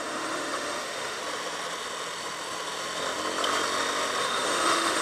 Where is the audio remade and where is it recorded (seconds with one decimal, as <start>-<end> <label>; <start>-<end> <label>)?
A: 0.0-1.2 remade; 1.2-4.2 recorded; 4.2-5.0 remade